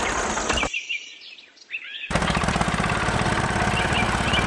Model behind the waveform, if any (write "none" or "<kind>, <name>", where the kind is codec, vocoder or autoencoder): none